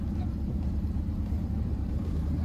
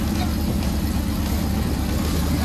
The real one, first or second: second